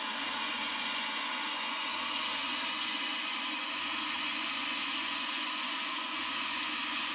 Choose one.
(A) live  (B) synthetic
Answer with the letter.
B